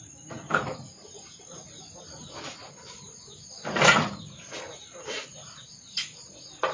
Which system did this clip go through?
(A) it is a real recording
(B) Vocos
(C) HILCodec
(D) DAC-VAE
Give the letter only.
A